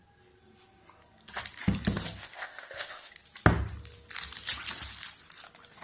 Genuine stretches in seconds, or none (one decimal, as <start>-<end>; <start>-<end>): 0.0-2.2; 3.1-5.8